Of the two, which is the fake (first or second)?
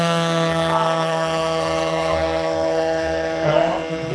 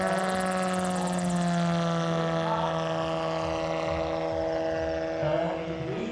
first